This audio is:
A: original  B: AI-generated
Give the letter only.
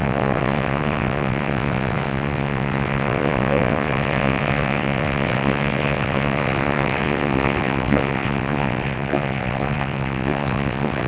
B